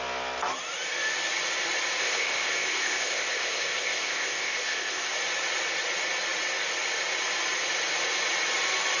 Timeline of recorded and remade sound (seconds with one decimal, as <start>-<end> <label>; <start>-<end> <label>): 0.0-2.0 recorded; 2.0-5.1 remade; 5.1-9.0 recorded

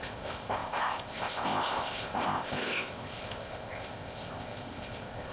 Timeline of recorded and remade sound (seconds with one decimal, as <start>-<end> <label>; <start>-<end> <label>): 0.0-5.3 remade